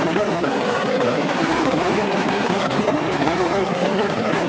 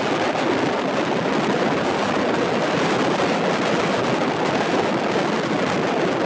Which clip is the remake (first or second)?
first